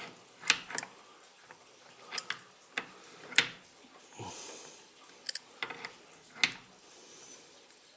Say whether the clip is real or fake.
real